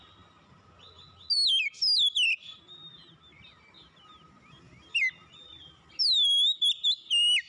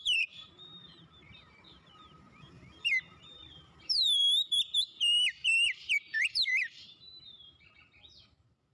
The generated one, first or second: second